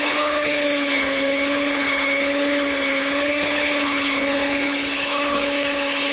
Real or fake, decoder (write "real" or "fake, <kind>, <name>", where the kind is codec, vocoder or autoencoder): fake, codec, HILCodec